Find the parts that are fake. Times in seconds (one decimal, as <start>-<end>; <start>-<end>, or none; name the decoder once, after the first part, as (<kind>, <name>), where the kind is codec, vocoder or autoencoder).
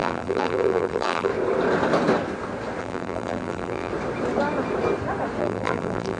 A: 0.0-1.3 (vocoder, BigVGAN v2); 2.8-3.9; 5.4-6.2